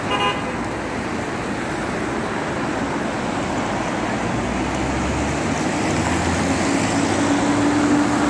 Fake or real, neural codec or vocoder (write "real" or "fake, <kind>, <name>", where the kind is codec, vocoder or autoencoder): real